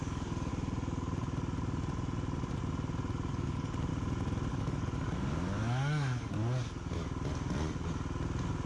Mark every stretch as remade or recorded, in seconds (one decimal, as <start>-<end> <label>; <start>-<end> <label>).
0.0-0.5 remade; 0.5-3.3 recorded; 3.3-3.9 remade; 3.9-4.5 recorded; 4.5-6.4 remade; 6.4-8.7 recorded